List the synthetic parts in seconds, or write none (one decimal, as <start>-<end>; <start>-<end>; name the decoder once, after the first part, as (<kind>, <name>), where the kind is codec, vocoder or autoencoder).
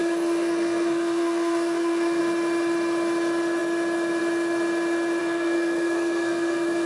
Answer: 0.0-2.2 (codec, SNAC); 5.2-6.9